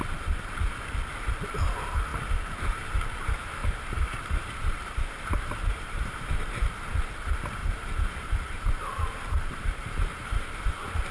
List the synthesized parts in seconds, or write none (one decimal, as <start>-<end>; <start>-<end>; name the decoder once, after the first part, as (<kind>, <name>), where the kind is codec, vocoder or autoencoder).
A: 3.6-6.6 (vocoder, BigVGAN v2); 7.6-10.7